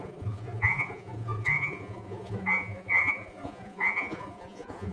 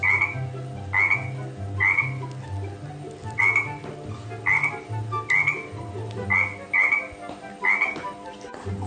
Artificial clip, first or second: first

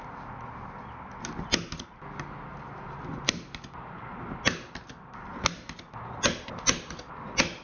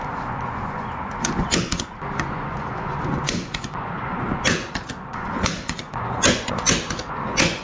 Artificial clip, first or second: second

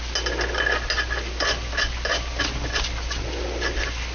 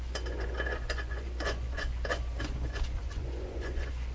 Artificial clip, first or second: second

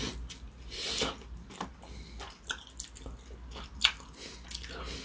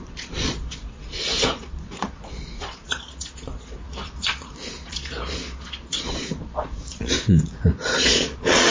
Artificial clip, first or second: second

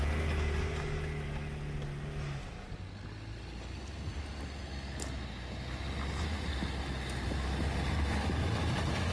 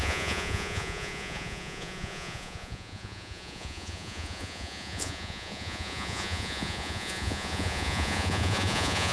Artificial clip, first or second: second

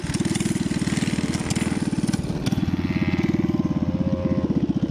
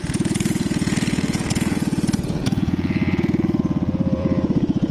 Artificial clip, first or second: second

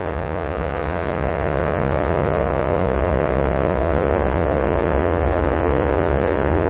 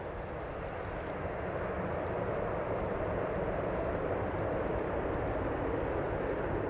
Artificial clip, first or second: first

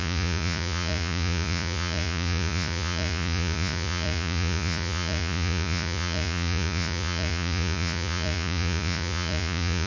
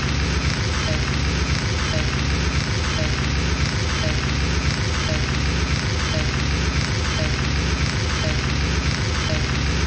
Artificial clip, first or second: first